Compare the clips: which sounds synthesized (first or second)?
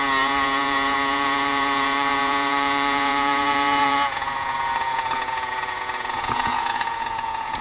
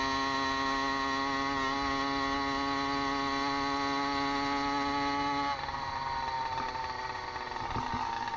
first